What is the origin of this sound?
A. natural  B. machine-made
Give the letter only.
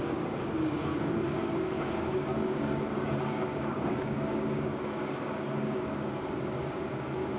B